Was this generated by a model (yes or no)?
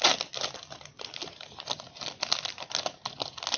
no